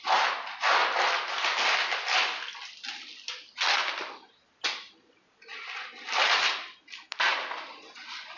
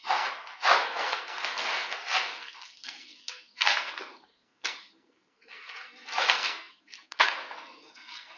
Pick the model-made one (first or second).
second